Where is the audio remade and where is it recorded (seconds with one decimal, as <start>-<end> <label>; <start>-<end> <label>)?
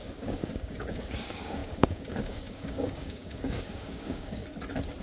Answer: 0.0-4.4 remade; 4.4-5.0 recorded